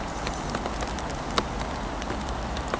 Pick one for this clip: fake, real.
real